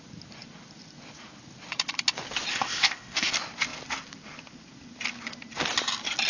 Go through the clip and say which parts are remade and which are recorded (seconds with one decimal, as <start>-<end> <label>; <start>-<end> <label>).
0.0-2.5 recorded; 2.5-3.3 remade; 3.3-6.3 recorded